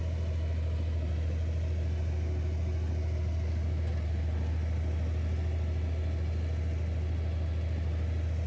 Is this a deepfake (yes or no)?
no